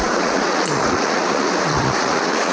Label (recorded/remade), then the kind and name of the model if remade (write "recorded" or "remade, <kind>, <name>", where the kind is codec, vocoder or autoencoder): remade, vocoder, Vocos